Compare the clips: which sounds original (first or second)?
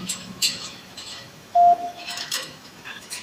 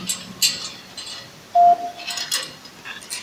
second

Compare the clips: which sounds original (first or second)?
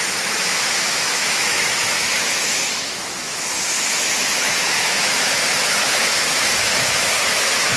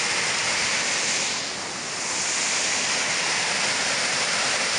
second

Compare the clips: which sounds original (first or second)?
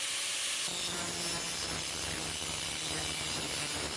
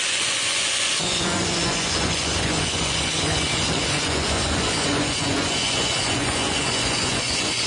first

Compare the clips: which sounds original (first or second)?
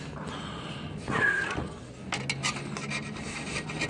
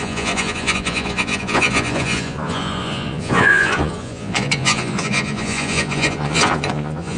first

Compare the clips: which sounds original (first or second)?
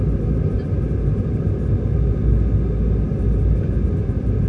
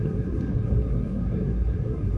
first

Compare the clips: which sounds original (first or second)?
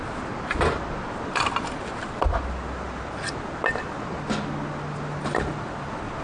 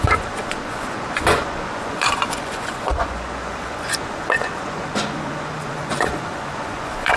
first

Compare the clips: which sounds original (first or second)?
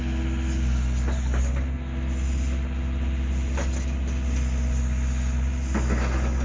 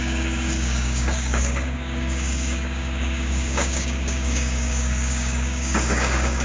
first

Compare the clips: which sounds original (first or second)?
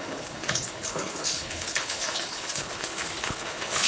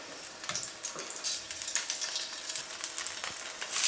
second